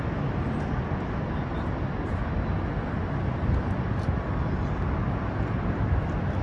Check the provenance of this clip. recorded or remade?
recorded